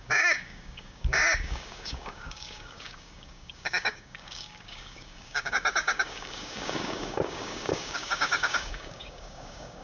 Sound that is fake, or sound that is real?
fake